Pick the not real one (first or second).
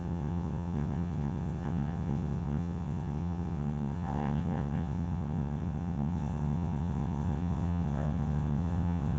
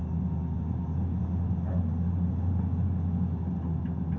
first